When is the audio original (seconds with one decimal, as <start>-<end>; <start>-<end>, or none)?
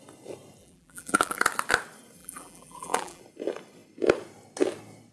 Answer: 0.0-0.6; 1.4-2.2; 3.2-5.1